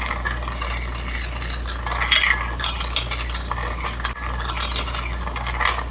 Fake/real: real